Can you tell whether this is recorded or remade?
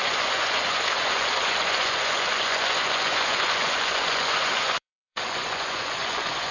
remade